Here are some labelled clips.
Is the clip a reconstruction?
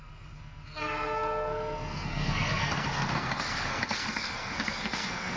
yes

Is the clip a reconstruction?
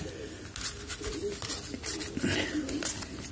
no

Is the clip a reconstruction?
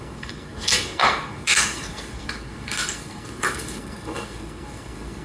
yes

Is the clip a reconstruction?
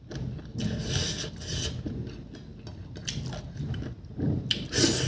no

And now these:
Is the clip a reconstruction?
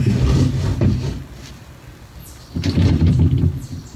no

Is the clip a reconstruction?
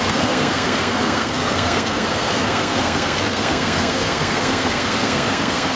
yes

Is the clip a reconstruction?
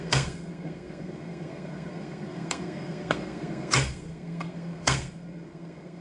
yes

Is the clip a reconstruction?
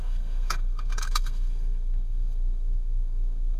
yes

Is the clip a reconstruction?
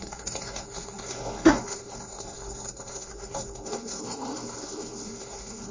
yes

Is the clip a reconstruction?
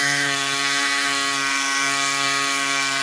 yes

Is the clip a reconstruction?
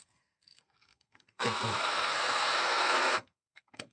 yes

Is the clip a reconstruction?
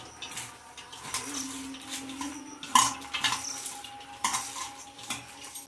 no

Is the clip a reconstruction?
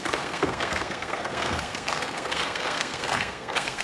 yes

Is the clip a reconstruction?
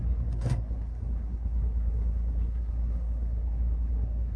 yes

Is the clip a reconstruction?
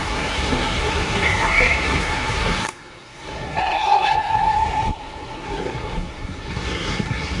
yes